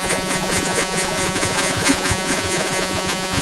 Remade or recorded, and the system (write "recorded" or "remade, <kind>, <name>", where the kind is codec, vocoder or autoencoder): remade, vocoder, Vocos